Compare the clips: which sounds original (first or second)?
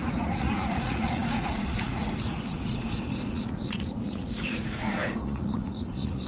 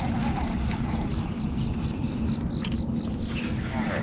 second